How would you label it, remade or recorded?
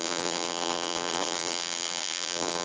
remade